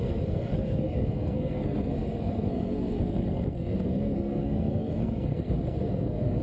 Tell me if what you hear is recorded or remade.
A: remade